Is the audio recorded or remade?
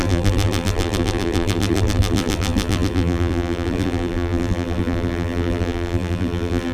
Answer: remade